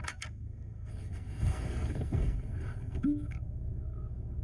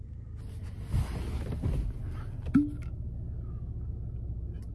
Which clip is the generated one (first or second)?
first